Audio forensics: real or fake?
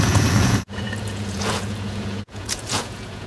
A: fake